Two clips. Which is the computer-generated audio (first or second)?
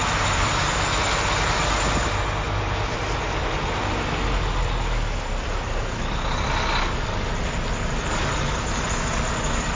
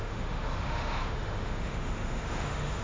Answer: second